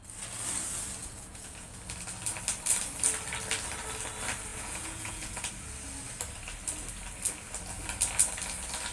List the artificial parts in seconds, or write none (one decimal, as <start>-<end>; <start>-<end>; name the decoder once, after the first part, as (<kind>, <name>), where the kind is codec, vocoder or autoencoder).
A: 1.0-1.8 (vocoder, Vocos); 4.5-5.5

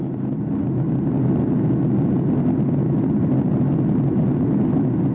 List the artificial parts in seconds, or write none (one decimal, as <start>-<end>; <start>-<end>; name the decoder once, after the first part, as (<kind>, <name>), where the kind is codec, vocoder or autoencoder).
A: none

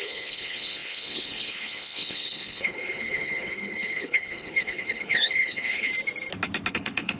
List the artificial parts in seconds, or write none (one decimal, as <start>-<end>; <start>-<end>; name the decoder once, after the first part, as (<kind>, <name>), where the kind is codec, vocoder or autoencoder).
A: 0.0-5.9 (codec, HILCodec); 6.7-7.2

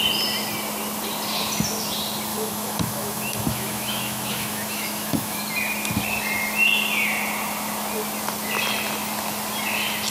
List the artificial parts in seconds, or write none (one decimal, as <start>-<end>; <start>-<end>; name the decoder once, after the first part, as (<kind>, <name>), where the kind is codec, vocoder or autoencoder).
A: 2.3-5.4 (autoencoder, DAC-VAE)

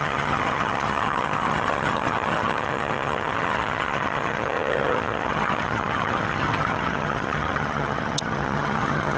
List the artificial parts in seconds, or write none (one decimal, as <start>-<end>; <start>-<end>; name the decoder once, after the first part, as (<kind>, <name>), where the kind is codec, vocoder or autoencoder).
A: 0.0-9.2 (vocoder, HiFi-GAN)

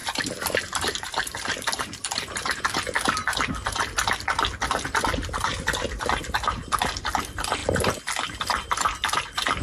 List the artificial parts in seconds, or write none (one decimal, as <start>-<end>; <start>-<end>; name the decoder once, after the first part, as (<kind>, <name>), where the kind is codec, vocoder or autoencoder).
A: 0.0-2.6 (vocoder, BigVGAN v2); 5.5-6.8; 7.6-8.4

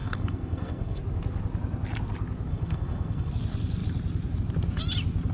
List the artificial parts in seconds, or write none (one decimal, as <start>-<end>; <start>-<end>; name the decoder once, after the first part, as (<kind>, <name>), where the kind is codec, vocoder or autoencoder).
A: 0.0-1.0 (codec, SNAC); 2.5-3.3